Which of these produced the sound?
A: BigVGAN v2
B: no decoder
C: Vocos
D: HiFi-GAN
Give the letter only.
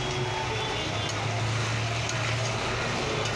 B